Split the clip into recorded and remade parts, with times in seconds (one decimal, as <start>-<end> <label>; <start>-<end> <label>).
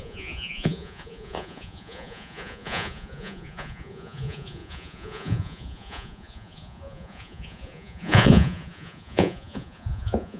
0.0-10.4 remade